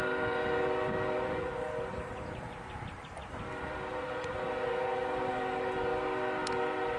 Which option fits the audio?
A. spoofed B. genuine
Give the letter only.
B